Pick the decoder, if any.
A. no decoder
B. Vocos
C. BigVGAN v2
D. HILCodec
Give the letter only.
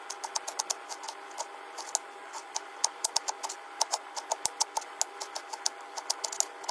A